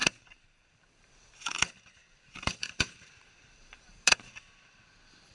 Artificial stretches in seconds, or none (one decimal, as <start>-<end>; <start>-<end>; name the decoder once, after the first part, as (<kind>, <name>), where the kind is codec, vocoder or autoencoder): 0.0-1.1 (vocoder, BigVGAN v2); 2.0-4.4